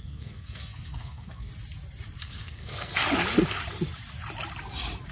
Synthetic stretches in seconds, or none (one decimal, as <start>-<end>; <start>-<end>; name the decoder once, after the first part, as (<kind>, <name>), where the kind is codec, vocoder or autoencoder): 0.0-1.5 (codec, SNAC); 2.2-2.9